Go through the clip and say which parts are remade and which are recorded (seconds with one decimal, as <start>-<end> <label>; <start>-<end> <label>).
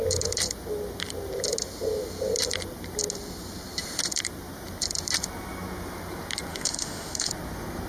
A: 0.0-6.5 recorded; 6.5-7.3 remade; 7.3-7.9 recorded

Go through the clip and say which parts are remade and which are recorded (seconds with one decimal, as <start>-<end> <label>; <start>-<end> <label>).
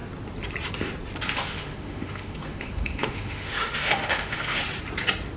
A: 0.0-1.4 recorded; 1.4-4.6 remade; 4.6-5.4 recorded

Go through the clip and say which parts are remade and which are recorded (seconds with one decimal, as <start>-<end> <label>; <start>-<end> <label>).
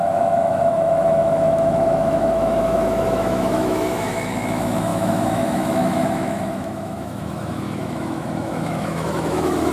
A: 0.0-9.7 remade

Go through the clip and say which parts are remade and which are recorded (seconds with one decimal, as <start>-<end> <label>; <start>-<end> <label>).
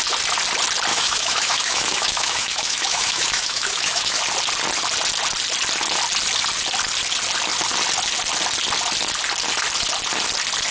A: 0.0-0.9 recorded; 0.9-4.2 remade; 4.2-10.7 recorded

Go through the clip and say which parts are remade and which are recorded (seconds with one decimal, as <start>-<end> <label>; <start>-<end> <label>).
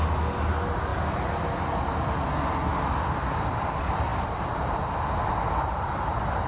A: 0.0-6.5 recorded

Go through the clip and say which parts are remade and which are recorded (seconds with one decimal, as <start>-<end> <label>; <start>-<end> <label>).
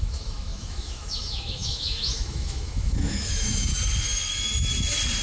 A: 0.0-3.7 remade; 3.7-5.2 recorded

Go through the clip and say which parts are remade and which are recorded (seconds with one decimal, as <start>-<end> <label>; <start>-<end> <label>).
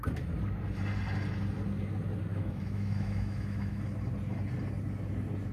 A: 0.0-2.3 recorded; 2.3-3.8 remade; 3.8-5.5 recorded